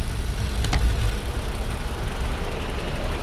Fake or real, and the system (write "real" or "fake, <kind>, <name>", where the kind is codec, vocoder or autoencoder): real